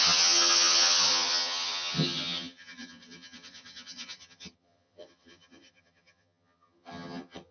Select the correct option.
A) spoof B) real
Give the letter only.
A